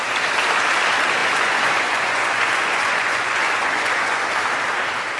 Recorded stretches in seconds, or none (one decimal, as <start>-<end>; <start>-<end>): 0.0-1.2; 4.3-5.2

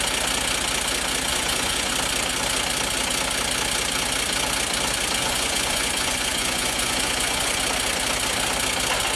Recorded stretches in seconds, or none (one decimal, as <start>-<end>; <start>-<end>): 0.0-1.3; 1.9-5.2; 7.6-9.2

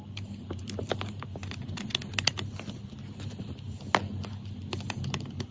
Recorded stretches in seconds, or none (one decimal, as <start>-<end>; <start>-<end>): 0.0-5.5

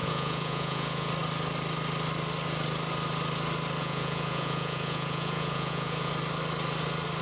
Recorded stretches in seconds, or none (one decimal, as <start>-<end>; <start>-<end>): 1.1-3.8; 6.1-7.2

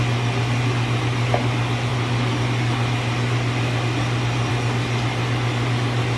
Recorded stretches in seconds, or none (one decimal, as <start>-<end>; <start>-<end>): 0.0-6.2